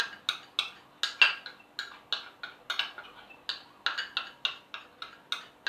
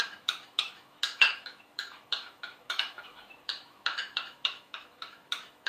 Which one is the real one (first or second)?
first